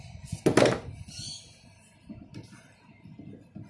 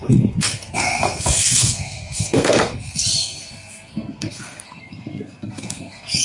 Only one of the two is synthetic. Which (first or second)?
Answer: second